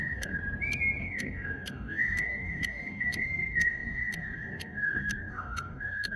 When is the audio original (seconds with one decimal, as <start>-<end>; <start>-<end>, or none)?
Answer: 0.4-1.0